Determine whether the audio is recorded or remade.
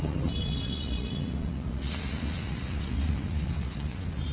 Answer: remade